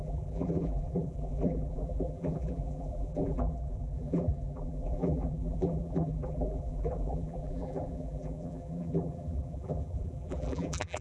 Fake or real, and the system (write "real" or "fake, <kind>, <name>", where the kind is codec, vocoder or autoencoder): fake, vocoder, BigVGAN v2